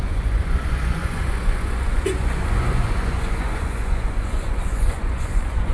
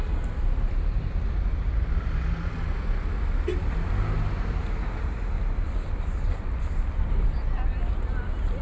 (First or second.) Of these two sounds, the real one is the second